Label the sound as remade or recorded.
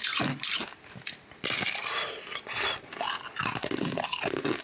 recorded